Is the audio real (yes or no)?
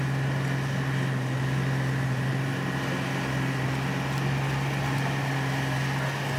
yes